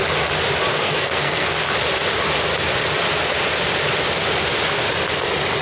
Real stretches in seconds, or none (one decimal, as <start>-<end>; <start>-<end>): 0.0-0.7; 1.6-5.6